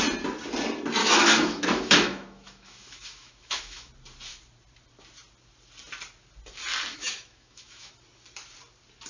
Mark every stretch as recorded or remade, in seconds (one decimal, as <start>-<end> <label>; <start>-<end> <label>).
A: 0.0-1.0 recorded; 1.0-3.9 remade; 3.9-6.9 recorded; 6.9-7.9 remade; 7.9-9.1 recorded